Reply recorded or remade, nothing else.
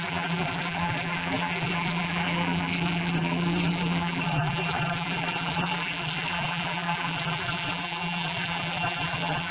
remade